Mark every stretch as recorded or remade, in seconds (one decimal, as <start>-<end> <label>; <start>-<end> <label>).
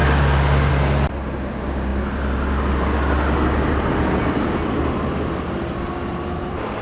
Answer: 0.0-6.8 recorded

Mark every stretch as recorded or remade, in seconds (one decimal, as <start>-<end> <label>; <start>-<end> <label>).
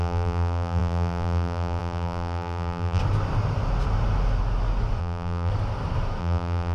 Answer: 0.0-3.0 remade; 3.0-5.0 recorded; 5.0-5.5 remade; 5.5-6.2 recorded; 6.2-6.7 remade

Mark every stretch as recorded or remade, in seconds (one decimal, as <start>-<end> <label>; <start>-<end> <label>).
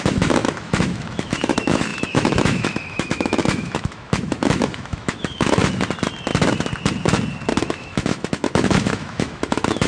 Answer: 0.0-5.6 remade; 5.6-7.6 recorded; 7.6-9.9 remade